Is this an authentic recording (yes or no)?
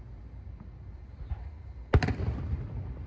yes